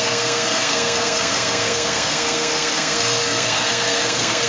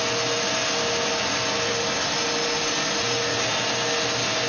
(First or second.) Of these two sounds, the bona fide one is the second